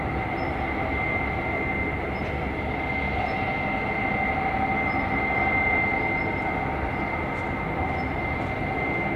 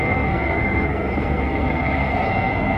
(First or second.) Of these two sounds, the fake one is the second